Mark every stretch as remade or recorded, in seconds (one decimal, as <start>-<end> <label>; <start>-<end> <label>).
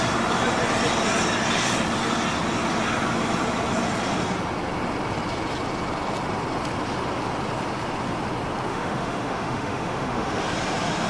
0.0-8.7 recorded; 8.7-10.4 remade; 10.4-11.1 recorded